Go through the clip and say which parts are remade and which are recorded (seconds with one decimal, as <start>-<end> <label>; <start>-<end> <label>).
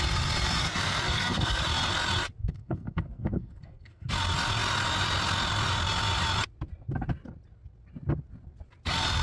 0.0-0.6 recorded; 0.6-1.6 remade; 1.6-2.4 recorded; 2.4-4.1 remade; 4.1-9.2 recorded